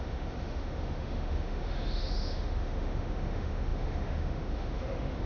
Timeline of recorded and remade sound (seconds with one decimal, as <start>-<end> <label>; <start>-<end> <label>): 0.0-5.3 remade